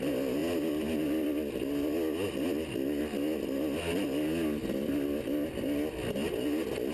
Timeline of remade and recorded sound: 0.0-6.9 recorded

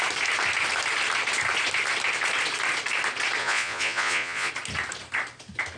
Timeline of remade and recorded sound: 0.0-3.4 recorded; 3.4-4.5 remade; 4.5-5.8 recorded

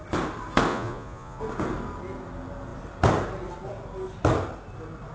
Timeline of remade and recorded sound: 0.0-0.7 recorded; 0.7-1.4 remade; 1.4-5.1 recorded

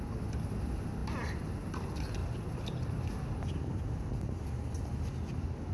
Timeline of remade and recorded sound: 0.0-5.7 recorded

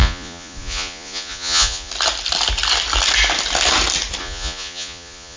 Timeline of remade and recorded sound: 0.0-1.9 remade; 1.9-4.2 recorded; 4.2-5.4 remade